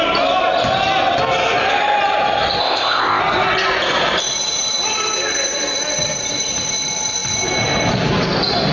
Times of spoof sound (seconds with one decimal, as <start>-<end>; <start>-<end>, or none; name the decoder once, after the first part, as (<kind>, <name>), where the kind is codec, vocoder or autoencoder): 2.6-3.2 (codec, ZipCodec)